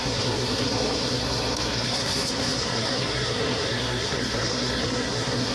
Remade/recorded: remade